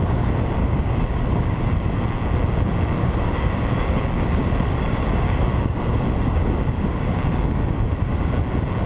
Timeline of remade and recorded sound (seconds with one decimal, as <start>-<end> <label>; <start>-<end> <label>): 0.0-0.6 recorded; 0.6-2.0 remade; 2.0-3.0 recorded; 3.0-8.3 remade; 8.3-8.9 recorded